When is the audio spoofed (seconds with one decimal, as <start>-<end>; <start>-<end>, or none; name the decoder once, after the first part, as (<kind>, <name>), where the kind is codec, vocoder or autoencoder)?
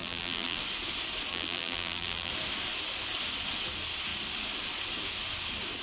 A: 0.0-0.6 (vocoder, BigVGAN v2); 1.3-2.3